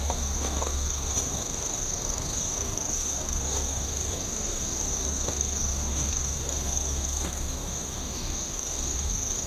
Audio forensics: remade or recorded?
remade